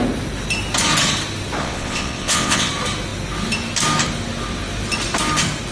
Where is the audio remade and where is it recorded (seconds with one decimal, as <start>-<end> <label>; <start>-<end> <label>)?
0.0-1.6 recorded; 1.6-2.7 remade; 2.7-5.7 recorded